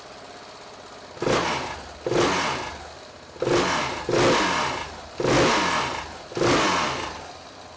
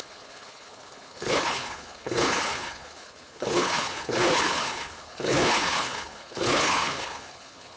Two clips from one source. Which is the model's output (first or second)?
second